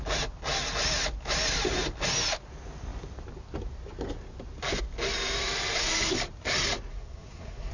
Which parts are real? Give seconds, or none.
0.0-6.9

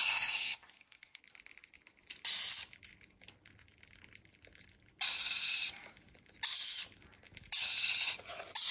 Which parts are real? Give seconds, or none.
1.2-8.7

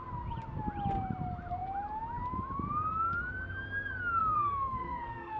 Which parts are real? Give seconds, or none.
0.0-4.2

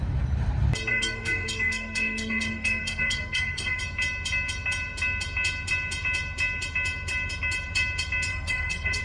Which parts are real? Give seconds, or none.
0.0-0.9; 3.8-8.3

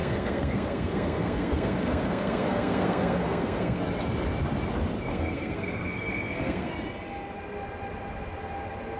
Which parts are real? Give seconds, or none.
3.8-5.1; 6.7-9.0